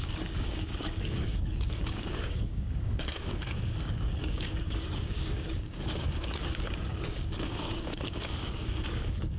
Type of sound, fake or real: fake